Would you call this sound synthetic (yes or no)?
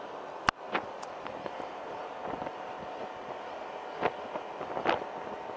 no